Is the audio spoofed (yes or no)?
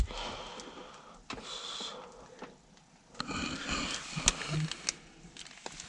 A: no